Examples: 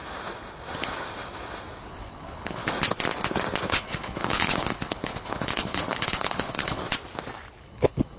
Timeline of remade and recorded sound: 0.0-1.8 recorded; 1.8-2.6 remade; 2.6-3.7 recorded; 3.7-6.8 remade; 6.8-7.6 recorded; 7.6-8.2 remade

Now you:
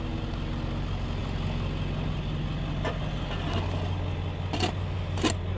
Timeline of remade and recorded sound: 0.0-5.6 recorded

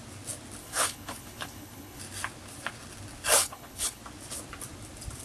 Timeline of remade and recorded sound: 0.0-0.6 recorded; 0.6-2.0 remade; 2.0-3.4 recorded; 3.4-4.0 remade; 4.0-5.2 recorded